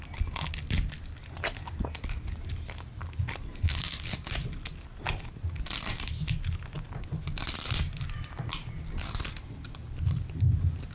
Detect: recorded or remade recorded